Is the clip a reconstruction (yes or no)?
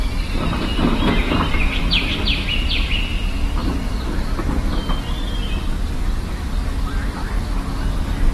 no